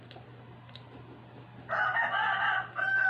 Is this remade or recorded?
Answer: recorded